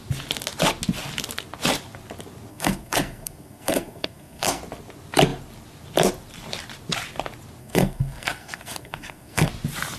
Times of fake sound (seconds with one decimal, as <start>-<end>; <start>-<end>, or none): 2.5-4.6; 7.6-9.5